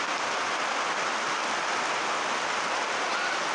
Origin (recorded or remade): recorded